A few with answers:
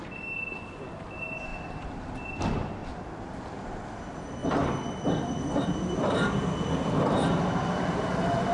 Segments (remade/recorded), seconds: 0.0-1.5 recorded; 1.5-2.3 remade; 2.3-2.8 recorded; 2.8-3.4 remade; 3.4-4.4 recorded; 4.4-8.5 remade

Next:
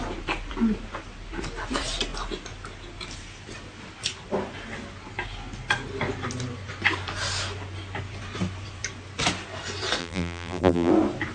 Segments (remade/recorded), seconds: 0.0-10.0 recorded; 10.0-10.9 remade; 10.9-11.3 recorded

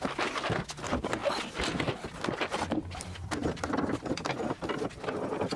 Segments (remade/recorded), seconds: 0.0-3.4 recorded; 3.4-4.1 remade; 4.1-5.6 recorded

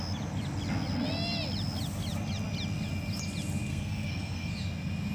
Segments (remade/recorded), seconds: 0.0-3.7 recorded; 3.7-4.5 remade; 4.5-5.1 recorded

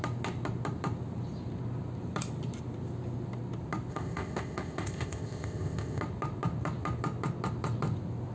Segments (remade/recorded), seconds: 0.0-3.9 recorded; 3.9-6.0 remade; 6.0-8.3 recorded